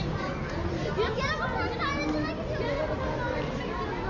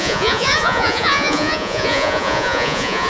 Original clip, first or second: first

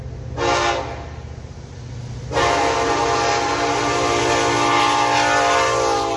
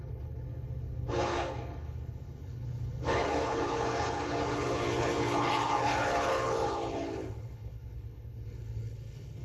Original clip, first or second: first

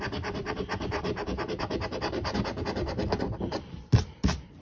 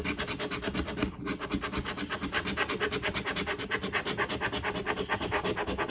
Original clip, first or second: second